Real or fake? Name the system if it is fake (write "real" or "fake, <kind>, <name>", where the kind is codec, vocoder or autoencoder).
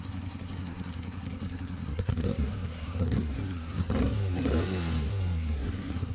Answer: fake, codec, SNAC